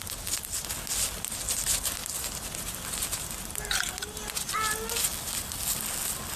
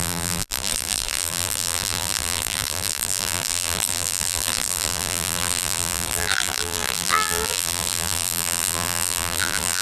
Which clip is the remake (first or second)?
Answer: second